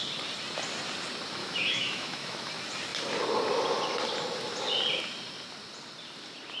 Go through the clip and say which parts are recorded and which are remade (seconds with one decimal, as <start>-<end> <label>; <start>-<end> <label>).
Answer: 0.0-1.4 recorded; 1.4-2.5 remade; 2.5-6.6 recorded